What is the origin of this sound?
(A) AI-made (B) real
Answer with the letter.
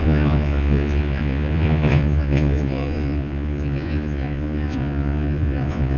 A